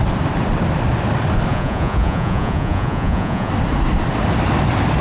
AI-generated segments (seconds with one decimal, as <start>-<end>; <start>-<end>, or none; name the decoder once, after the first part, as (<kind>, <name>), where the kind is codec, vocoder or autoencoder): 1.5-3.5 (vocoder, Vocos)